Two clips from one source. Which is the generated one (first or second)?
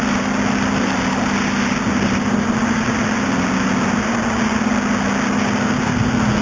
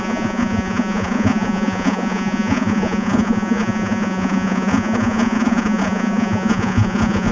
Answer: second